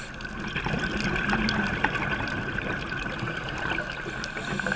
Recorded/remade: recorded